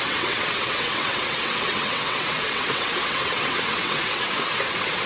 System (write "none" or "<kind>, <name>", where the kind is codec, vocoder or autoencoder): vocoder, WaveNeXt